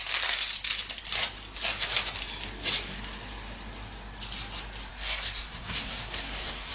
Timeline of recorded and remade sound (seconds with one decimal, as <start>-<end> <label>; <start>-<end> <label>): 0.0-4.9 recorded; 4.9-6.7 remade